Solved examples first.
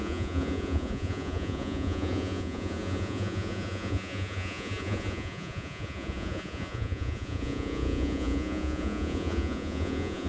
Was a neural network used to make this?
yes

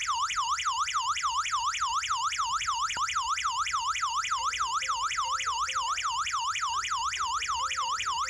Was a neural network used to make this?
no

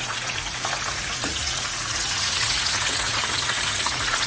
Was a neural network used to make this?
yes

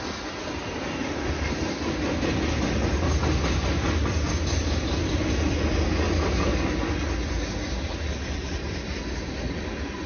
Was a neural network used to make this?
no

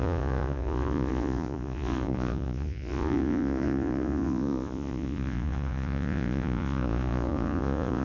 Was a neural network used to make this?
yes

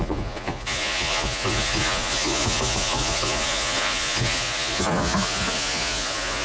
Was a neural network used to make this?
yes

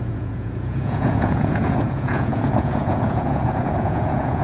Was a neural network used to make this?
yes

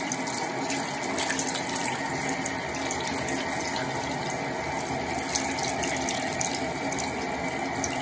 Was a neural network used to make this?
no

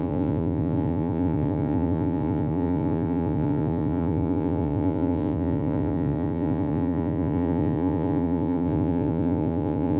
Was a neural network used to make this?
yes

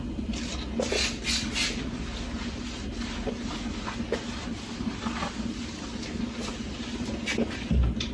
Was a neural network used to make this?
no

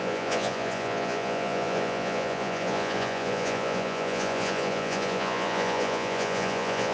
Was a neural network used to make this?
yes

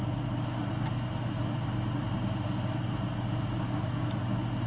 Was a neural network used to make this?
no